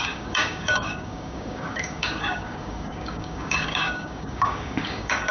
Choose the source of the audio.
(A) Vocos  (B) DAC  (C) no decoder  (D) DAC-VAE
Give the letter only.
B